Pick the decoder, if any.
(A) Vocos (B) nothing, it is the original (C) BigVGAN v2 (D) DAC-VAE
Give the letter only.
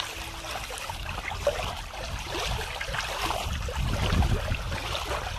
B